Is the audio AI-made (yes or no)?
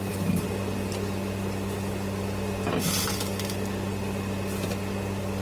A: no